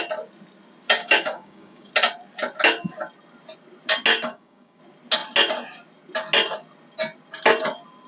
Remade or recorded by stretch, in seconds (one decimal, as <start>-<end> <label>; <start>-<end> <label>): 0.0-1.0 recorded; 1.0-1.9 remade; 1.9-4.1 recorded; 4.1-4.8 remade; 4.8-8.1 recorded